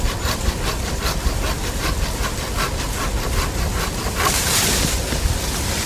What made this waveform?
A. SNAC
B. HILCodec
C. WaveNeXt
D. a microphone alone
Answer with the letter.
D